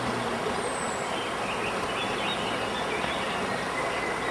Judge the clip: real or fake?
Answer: real